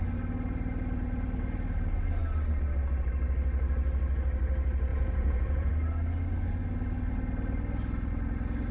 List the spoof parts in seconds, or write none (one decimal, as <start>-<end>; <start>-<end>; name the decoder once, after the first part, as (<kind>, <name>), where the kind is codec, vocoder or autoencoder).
4.9-5.7 (vocoder, Vocos)